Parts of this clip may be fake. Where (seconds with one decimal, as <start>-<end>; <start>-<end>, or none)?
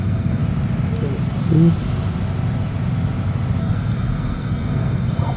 0.0-0.4; 3.6-5.4